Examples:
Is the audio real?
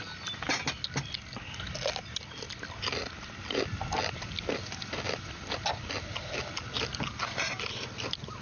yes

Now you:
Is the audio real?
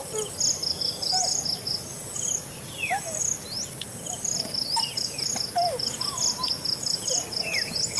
yes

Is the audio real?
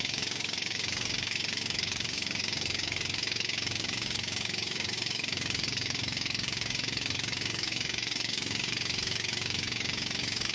no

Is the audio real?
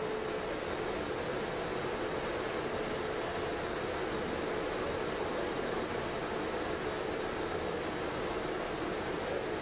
yes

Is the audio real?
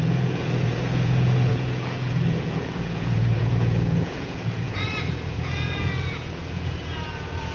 no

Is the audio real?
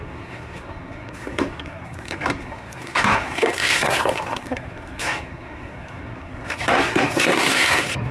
no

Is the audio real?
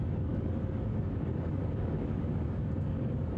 no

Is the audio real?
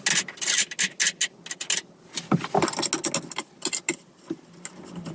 yes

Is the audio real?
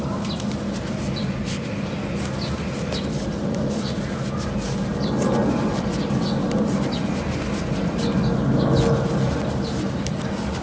yes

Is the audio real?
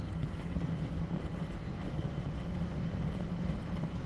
yes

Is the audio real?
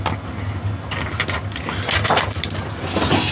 yes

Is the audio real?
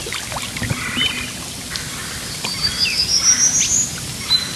yes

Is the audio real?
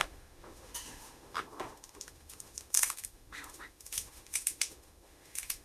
no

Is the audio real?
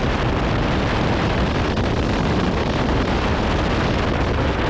yes